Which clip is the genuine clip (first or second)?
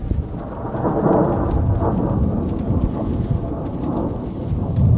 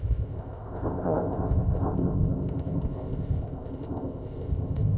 first